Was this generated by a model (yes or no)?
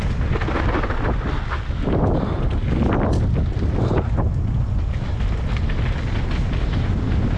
no